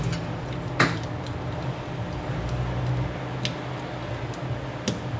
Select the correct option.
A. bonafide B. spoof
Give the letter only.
A